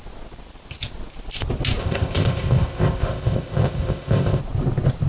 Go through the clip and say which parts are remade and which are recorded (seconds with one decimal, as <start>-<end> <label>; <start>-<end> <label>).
0.0-1.8 recorded; 1.8-4.4 remade; 4.4-5.1 recorded